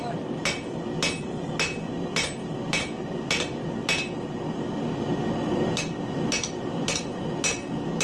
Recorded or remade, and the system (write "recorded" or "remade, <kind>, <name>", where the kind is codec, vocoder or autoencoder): recorded